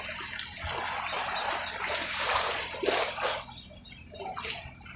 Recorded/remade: recorded